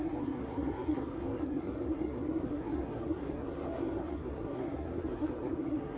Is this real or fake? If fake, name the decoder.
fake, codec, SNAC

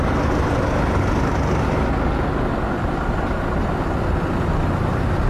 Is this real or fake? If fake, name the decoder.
real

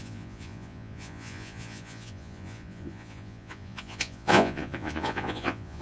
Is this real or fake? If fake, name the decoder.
fake, vocoder, Vocos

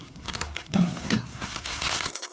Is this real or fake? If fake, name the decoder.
fake, codec, SNAC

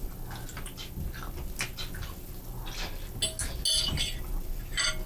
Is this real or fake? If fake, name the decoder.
real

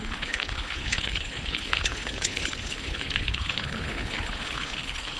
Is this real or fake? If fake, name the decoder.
fake, codec, HILCodec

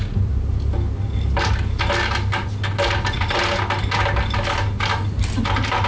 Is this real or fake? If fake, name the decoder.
real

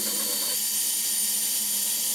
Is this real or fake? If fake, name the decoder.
fake, vocoder, BigVGAN v2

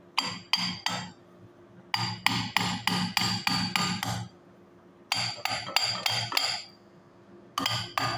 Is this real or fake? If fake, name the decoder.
real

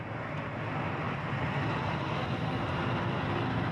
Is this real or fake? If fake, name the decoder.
real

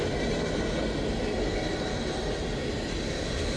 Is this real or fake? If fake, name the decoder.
real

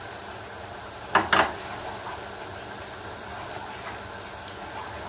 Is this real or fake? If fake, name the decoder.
real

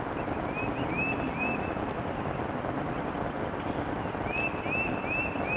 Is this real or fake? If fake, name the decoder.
real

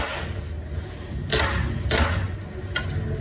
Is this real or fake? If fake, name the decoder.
real